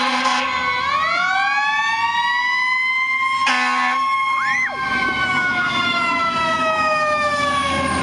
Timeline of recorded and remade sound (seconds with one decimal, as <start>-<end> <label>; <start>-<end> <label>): 0.0-4.5 recorded; 4.5-8.0 remade